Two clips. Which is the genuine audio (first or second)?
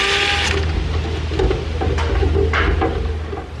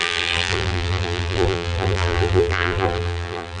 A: first